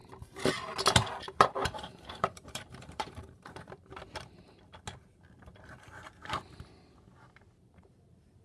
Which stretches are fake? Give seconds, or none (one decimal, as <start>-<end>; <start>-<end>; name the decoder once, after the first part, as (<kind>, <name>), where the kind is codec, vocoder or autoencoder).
0.0-0.5 (vocoder, BigVGAN v2); 1.6-3.9